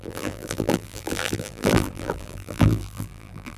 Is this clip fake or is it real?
fake